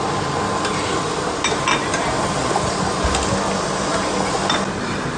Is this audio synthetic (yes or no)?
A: no